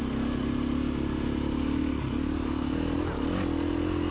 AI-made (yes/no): no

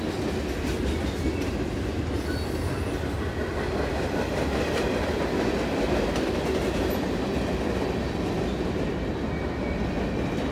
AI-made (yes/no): no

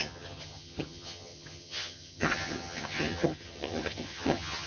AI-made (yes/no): yes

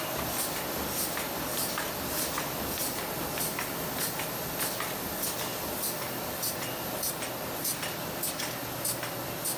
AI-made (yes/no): no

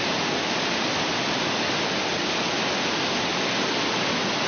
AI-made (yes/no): no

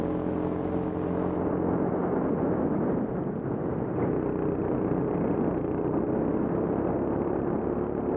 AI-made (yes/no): no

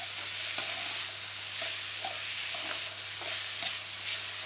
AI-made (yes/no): no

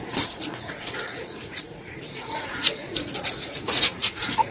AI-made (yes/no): yes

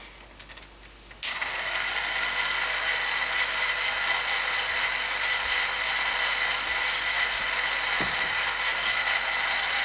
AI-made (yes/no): no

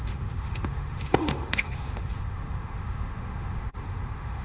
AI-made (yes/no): yes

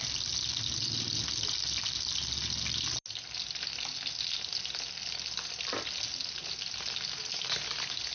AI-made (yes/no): no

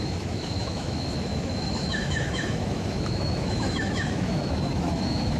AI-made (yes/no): yes